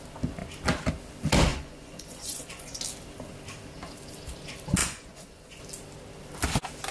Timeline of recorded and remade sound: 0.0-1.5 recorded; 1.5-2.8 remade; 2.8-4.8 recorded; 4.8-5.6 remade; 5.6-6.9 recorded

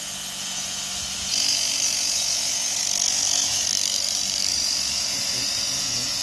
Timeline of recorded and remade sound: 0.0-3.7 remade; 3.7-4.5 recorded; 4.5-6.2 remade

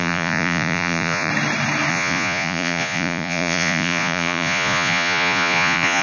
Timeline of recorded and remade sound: 0.0-1.3 remade; 1.3-1.9 recorded; 1.9-6.0 remade